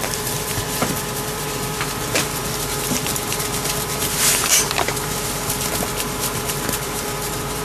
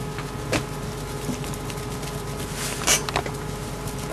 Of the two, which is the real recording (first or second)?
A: second